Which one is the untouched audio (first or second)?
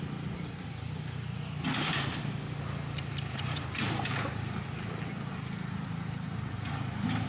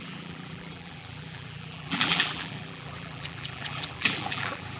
first